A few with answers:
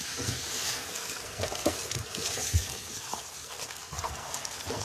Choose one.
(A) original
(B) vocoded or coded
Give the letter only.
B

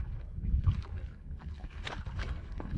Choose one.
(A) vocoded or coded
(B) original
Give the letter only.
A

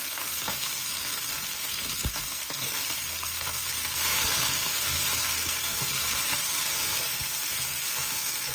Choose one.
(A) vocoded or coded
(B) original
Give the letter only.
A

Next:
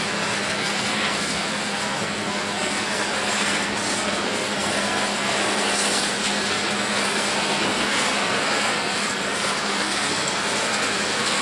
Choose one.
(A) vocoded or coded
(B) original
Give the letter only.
A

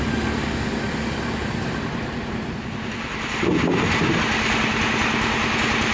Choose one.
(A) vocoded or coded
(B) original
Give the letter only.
B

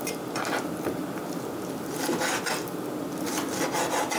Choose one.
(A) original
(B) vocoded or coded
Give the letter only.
A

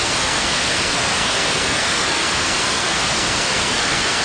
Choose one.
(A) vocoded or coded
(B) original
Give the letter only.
A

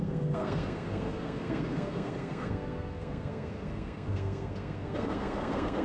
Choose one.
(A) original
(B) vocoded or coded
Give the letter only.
B